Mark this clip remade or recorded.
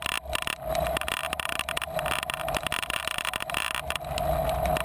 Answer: recorded